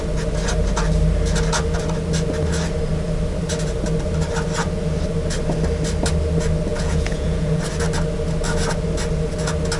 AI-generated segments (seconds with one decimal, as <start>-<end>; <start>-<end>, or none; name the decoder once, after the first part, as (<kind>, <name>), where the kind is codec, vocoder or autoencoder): 6.7-7.6 (vocoder, Vocos)